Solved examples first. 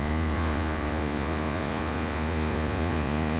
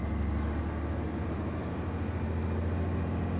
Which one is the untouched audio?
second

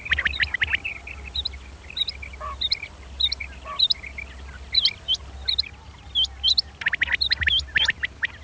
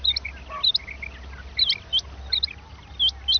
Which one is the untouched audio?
second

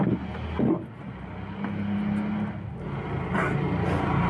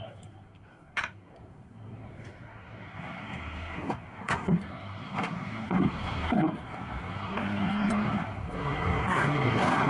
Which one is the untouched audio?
first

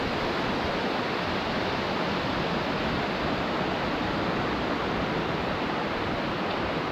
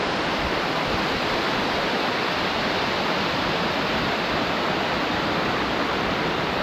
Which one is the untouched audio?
first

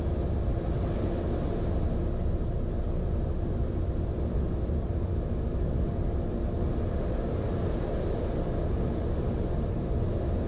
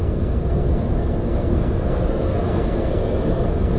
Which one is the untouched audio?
first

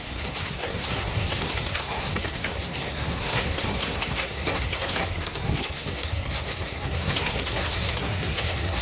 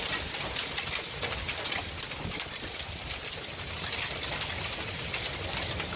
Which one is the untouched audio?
second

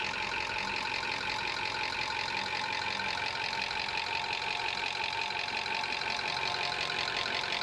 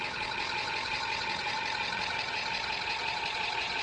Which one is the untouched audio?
first